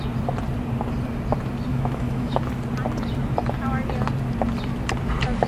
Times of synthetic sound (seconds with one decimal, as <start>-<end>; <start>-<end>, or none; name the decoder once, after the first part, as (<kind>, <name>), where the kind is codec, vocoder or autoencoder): 1.7-2.4 (autoencoder, DAC-VAE)